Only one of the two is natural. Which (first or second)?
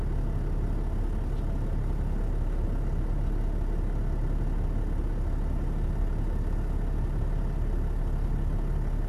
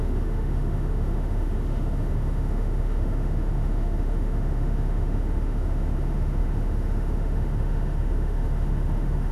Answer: first